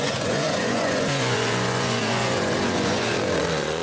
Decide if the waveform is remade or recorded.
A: remade